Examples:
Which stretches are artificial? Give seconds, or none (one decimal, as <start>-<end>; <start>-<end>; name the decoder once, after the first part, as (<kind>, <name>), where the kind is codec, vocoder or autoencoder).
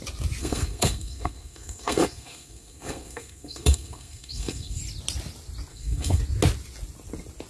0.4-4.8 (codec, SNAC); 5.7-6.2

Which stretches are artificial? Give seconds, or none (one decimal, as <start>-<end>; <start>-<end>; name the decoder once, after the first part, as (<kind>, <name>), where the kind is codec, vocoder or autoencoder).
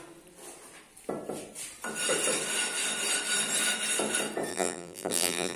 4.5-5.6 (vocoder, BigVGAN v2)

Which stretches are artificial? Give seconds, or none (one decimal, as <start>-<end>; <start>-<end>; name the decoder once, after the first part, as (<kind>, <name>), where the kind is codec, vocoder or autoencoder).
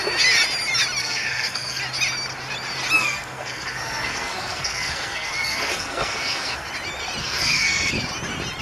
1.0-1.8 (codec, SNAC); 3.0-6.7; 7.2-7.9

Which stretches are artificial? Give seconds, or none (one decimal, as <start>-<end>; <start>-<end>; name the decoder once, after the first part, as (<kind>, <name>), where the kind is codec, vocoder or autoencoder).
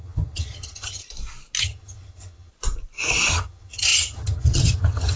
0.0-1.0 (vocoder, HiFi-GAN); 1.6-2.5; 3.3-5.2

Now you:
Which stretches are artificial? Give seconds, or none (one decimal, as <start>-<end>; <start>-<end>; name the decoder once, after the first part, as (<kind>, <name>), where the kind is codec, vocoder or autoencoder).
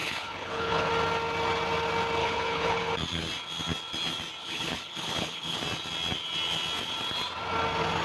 0.0-0.9 (codec, HILCodec); 2.2-2.9; 4.4-5.6